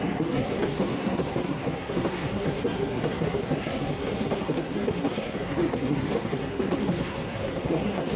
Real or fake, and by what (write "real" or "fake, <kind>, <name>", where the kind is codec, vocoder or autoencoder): fake, codec, SNAC